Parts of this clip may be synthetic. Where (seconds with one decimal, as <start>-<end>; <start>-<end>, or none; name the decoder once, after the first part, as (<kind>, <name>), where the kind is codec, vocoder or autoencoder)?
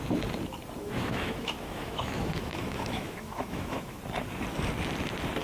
0.8-4.0 (autoencoder, DAC-VAE)